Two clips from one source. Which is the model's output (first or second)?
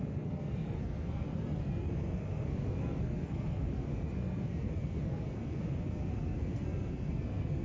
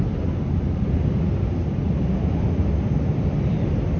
first